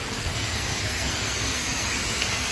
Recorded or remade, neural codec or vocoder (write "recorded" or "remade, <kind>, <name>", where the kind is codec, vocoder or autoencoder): remade, codec, SNAC